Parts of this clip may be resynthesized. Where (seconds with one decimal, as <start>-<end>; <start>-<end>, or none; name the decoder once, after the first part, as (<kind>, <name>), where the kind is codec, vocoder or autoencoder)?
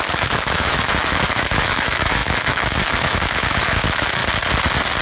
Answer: 0.0-4.2 (autoencoder, DAC-VAE)